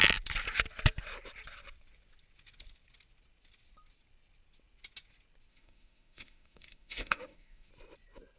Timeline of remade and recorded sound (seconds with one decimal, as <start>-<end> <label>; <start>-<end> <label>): 0.0-5.5 recorded; 5.5-7.7 remade; 7.7-8.4 recorded